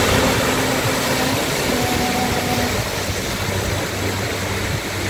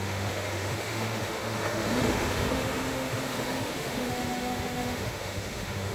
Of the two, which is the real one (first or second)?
first